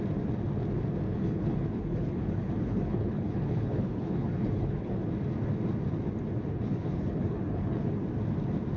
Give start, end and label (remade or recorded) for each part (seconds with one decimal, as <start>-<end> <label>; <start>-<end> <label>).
0.0-1.1 recorded; 1.1-5.0 remade; 5.0-6.4 recorded; 6.4-8.0 remade; 8.0-8.8 recorded